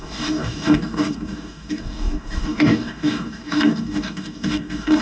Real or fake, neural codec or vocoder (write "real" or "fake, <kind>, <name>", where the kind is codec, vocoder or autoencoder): fake, codec, DAC